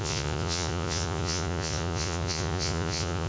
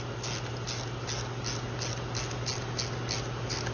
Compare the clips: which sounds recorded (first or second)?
second